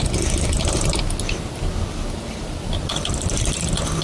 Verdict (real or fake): real